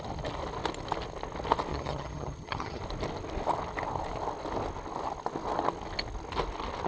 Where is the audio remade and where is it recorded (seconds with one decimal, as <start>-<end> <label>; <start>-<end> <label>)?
0.0-1.7 recorded; 1.7-2.8 remade; 2.8-6.9 recorded